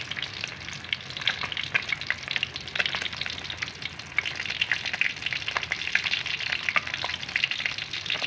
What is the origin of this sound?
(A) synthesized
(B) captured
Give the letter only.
B